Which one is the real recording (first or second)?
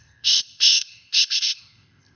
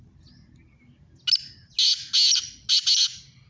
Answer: second